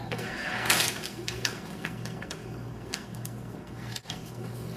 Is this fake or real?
fake